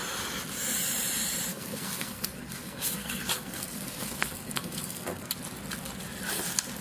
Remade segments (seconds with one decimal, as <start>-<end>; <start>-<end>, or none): 1.5-5.3